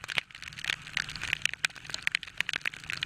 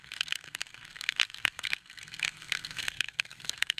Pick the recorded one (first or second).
first